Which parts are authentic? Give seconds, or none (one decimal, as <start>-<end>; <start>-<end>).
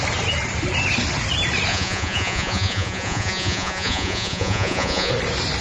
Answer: 0.0-1.7; 5.1-5.6